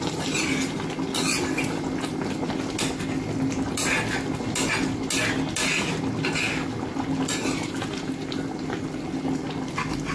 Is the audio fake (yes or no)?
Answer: no